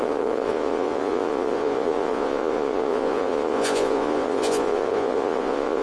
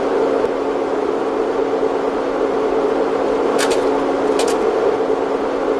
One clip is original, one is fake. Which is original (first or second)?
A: second